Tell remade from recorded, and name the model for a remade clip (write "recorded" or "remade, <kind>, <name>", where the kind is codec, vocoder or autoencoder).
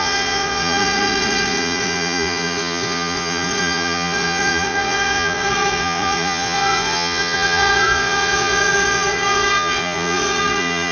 remade, vocoder, Vocos